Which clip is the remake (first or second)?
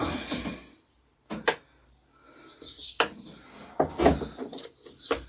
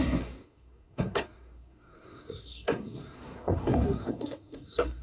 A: second